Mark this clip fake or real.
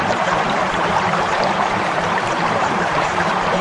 fake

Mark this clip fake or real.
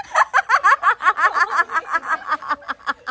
real